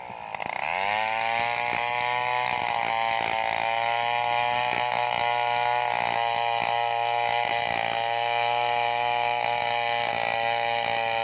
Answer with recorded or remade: recorded